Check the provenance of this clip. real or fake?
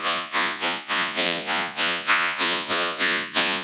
fake